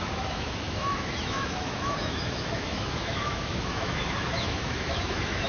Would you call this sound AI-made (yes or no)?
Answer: yes